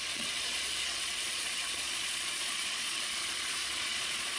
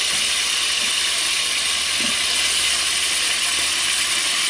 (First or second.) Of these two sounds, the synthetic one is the first